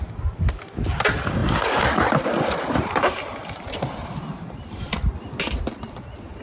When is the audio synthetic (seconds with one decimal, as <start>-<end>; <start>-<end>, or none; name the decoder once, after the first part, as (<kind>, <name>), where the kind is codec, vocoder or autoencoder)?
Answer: 1.4-5.2 (vocoder, BigVGAN v2)